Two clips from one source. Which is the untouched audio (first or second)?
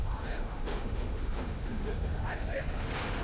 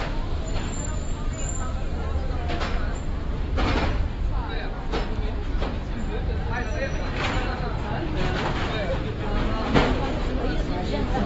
second